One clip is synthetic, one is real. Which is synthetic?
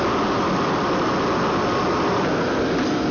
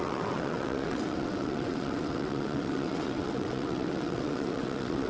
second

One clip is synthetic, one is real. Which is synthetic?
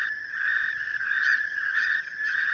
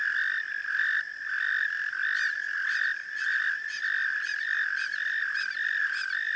first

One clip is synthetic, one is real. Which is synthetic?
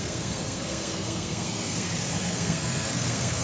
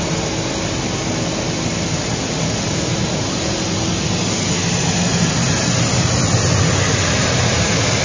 first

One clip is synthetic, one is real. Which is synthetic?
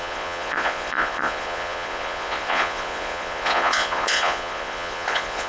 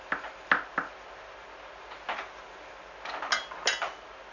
first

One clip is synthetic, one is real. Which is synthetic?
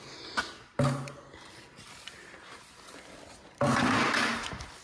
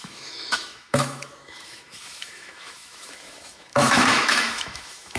second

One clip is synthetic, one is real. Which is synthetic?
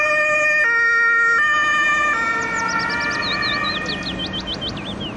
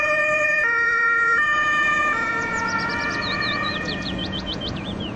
second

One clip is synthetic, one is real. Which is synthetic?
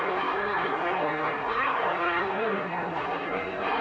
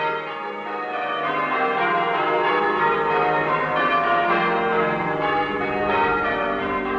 first